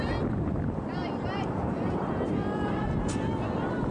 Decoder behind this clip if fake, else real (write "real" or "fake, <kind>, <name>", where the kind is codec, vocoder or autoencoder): fake, vocoder, BigVGAN v2